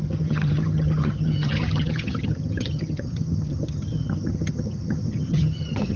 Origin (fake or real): fake